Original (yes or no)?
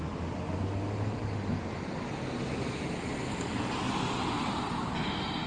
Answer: yes